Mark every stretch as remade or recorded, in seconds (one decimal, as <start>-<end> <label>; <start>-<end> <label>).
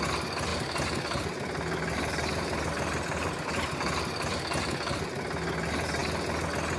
0.0-0.5 recorded; 0.5-4.4 remade; 4.4-6.8 recorded